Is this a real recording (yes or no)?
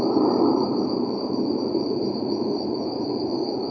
no